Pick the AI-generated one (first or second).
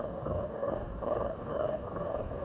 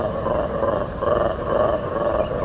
first